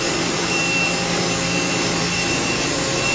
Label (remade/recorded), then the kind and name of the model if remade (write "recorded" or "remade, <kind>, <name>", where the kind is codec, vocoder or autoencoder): remade, vocoder, BigVGAN v2